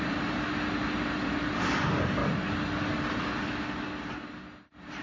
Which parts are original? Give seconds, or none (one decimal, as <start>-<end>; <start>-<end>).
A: 0.5-1.5; 2.2-4.6